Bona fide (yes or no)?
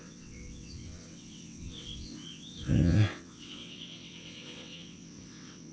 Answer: no